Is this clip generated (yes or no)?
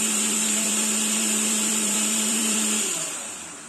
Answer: yes